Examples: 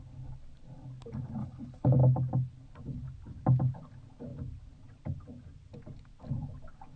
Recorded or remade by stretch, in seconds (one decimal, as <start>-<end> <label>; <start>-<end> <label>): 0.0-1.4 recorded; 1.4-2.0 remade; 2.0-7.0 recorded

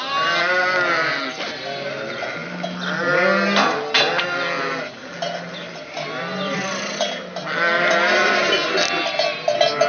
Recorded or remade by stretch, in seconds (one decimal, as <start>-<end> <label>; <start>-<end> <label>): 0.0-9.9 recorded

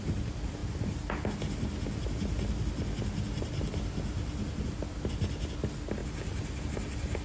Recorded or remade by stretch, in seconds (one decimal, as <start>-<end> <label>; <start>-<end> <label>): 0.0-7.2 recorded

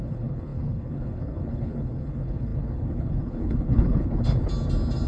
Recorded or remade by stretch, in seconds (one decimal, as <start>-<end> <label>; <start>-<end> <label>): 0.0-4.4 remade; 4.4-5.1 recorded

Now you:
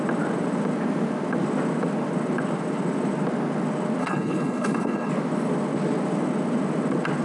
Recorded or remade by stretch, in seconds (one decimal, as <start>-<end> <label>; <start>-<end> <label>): 0.0-4.0 recorded; 4.0-5.1 remade; 5.1-7.2 recorded

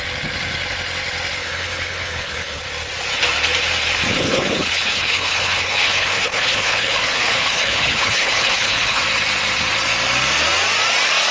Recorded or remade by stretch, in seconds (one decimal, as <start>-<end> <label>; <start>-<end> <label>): 0.0-1.4 recorded; 1.4-2.6 remade; 2.6-4.1 recorded; 4.1-9.0 remade; 9.0-11.3 recorded